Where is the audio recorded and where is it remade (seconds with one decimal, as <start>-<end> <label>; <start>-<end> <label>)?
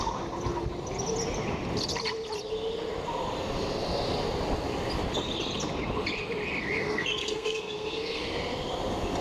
0.0-6.8 recorded; 6.8-8.2 remade; 8.2-9.2 recorded